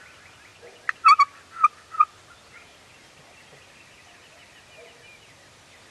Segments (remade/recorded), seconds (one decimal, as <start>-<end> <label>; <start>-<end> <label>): 0.0-5.9 recorded